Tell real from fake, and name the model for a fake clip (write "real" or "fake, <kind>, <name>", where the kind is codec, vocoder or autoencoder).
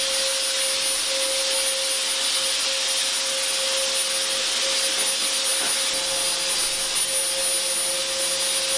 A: real